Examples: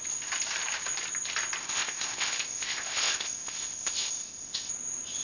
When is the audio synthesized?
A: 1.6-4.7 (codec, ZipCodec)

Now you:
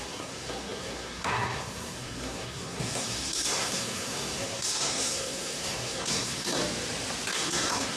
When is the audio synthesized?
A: 0.0-6.6 (codec, SNAC); 7.3-8.0

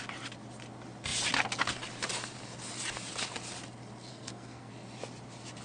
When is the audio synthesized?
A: 4.1-4.7 (codec, SNAC)

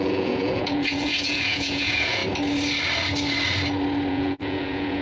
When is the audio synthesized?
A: 0.0-2.2 (vocoder, Vocos); 4.1-5.0

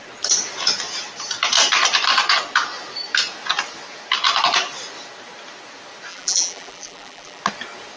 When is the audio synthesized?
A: 6.1-7.4 (vocoder, BigVGAN v2)

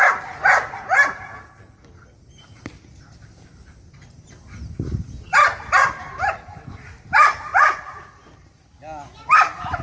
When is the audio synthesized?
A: 7.5-8.0 (vocoder, Vocos)

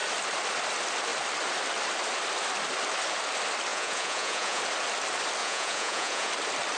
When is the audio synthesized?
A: 3.7-4.6 (vocoder, Vocos); 5.4-6.3

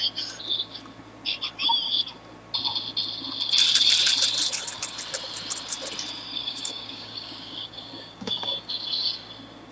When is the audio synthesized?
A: 6.4-8.5 (codec, DAC)